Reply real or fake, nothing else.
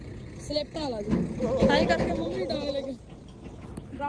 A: real